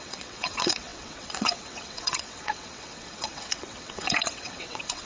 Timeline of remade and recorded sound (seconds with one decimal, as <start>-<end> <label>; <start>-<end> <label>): 0.0-5.0 remade